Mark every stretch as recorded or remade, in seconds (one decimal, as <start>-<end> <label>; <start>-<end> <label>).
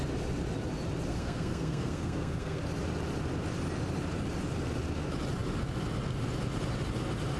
0.0-1.1 recorded; 1.1-2.6 remade; 2.6-7.4 recorded